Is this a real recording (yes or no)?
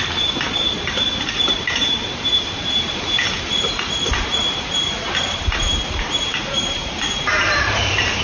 no